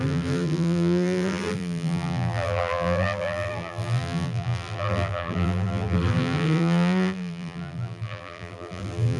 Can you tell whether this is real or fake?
fake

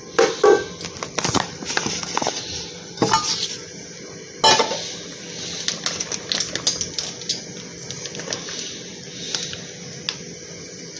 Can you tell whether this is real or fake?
real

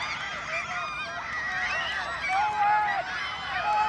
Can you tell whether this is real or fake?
real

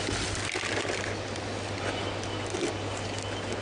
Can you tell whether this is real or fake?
real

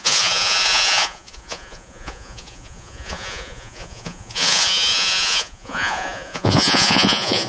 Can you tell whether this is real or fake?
fake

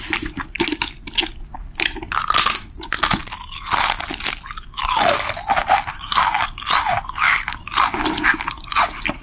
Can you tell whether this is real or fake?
real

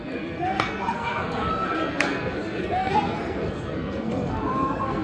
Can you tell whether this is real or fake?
fake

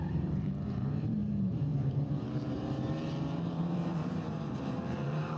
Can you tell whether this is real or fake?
fake